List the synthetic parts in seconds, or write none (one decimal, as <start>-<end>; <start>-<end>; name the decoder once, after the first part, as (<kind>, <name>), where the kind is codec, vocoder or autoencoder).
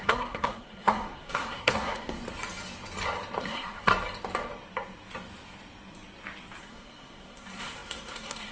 0.0-2.2 (codec, SNAC); 3.4-3.9; 6.6-8.5